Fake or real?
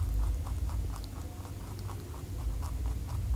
real